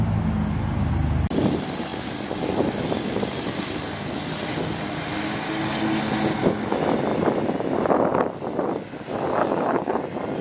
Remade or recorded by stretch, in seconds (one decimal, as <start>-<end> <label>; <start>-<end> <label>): 0.0-9.4 recorded; 9.4-10.0 remade; 10.0-10.4 recorded